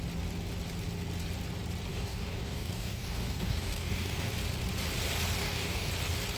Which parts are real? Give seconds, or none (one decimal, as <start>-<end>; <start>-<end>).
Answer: 0.0-1.9; 4.3-5.4; 5.9-6.4